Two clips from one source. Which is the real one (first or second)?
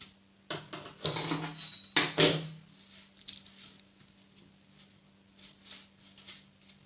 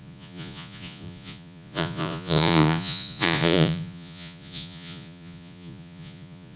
first